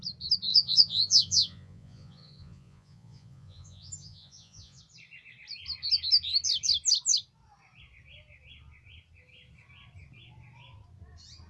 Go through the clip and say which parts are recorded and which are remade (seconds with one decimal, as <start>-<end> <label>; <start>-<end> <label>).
0.0-0.5 recorded; 0.5-4.8 remade; 4.8-11.5 recorded